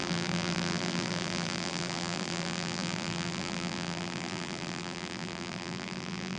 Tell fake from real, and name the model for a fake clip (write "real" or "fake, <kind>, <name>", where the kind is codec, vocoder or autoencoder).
fake, vocoder, BigVGAN v2